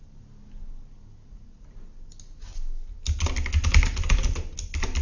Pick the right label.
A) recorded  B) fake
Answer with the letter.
A